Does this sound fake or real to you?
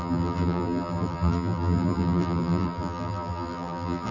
fake